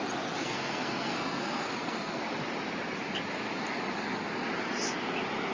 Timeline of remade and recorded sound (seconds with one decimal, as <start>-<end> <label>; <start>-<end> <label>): 0.0-0.4 recorded; 0.4-2.2 remade; 2.2-5.5 recorded